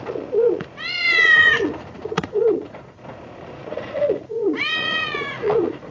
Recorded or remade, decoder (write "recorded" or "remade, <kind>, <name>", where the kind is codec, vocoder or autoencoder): remade, vocoder, Vocos